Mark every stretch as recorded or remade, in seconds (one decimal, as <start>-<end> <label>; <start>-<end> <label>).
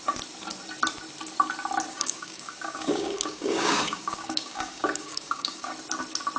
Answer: 0.0-1.9 recorded; 1.9-5.7 remade; 5.7-6.4 recorded